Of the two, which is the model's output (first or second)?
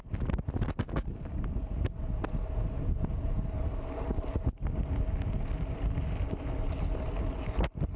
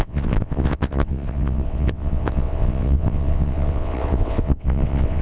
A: second